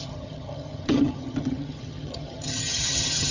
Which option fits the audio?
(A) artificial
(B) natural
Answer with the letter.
A